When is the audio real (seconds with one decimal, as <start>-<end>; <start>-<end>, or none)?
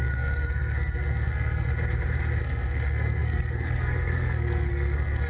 1.7-2.4